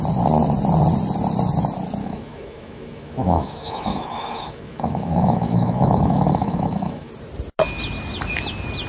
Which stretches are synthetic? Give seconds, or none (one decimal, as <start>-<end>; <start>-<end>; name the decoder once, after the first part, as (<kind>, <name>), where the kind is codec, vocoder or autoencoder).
2.0-7.1 (autoencoder, DAC-VAE)